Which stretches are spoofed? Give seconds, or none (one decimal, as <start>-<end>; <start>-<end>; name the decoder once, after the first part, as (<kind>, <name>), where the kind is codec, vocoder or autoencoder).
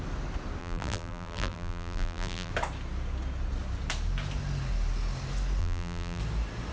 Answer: 0.6-2.5 (vocoder, BigVGAN v2); 5.6-6.2